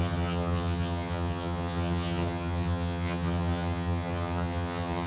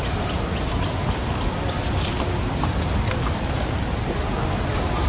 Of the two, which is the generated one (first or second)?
first